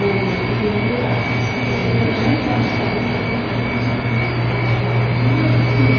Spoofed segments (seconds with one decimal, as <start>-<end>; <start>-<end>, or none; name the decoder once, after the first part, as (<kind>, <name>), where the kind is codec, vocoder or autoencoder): none